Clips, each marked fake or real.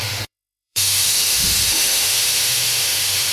fake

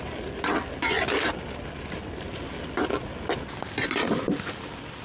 real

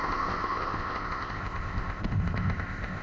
fake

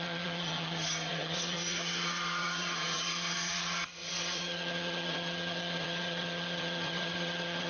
fake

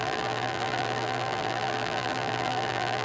fake